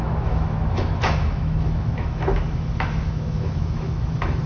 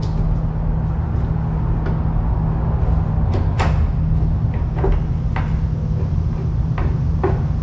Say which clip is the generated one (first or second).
first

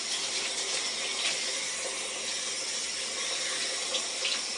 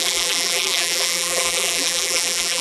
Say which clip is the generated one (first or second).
second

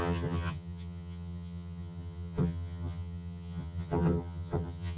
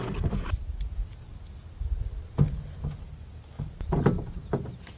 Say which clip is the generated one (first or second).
first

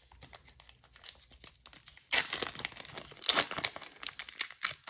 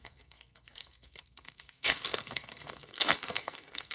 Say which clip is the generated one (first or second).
second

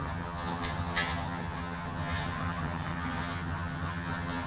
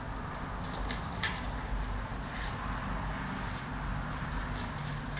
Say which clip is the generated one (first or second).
first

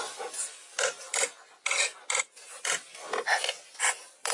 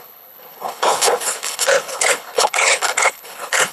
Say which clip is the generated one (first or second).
second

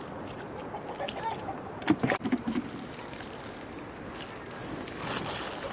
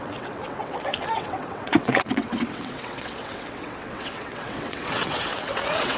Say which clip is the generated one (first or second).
second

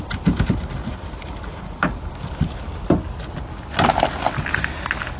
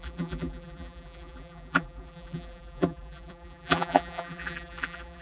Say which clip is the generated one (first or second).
second